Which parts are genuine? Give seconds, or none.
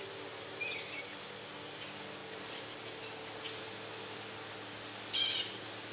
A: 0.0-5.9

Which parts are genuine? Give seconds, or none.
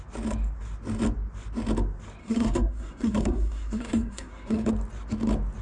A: 0.0-2.2; 4.7-5.6